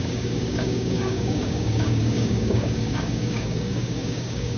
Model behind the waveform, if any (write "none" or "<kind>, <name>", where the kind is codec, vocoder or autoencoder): codec, DAC